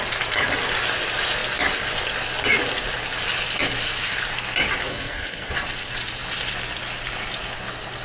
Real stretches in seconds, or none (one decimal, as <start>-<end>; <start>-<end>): 0.0-4.9; 5.5-8.0